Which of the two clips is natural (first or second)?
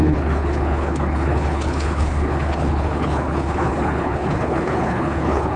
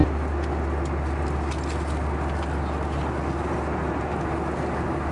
second